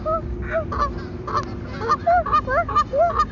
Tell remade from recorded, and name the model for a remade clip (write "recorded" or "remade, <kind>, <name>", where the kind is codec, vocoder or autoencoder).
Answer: recorded